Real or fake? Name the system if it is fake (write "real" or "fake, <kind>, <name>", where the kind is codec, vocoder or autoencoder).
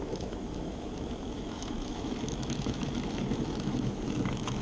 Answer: fake, autoencoder, DAC-VAE